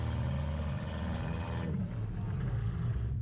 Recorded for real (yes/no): yes